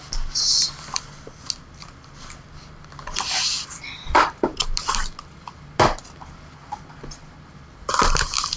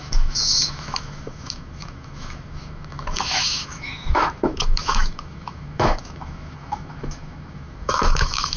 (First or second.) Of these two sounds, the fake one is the second